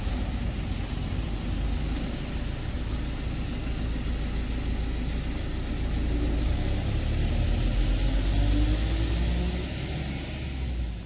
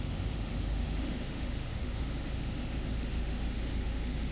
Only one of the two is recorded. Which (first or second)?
first